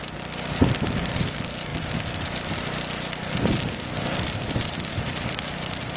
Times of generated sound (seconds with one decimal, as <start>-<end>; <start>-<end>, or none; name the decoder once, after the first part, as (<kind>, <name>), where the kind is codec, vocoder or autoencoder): 1.7-5.3 (vocoder, BigVGAN v2)